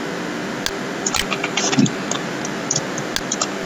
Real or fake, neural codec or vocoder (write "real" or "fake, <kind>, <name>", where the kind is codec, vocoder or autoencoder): real